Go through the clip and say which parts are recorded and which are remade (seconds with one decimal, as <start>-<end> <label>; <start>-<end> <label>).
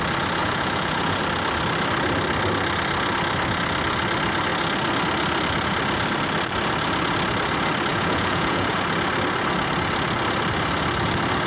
0.0-0.4 recorded; 0.4-1.2 remade; 1.2-7.9 recorded; 7.9-8.8 remade; 8.8-11.5 recorded